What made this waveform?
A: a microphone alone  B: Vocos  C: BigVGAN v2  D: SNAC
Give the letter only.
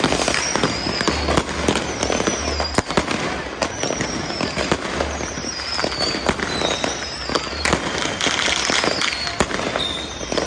A